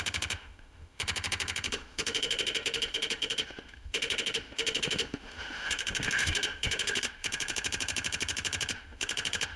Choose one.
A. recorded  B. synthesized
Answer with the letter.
B